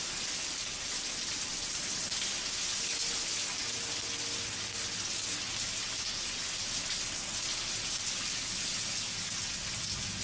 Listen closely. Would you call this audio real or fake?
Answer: real